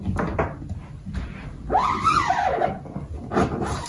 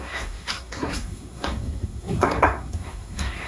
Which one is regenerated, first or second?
second